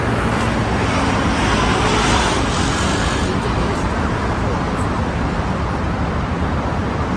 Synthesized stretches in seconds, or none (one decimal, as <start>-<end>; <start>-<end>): none